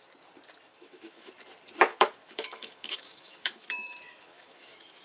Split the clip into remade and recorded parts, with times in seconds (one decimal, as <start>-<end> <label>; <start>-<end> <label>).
0.0-0.7 recorded; 0.7-1.3 remade; 1.3-1.9 recorded; 1.9-5.0 remade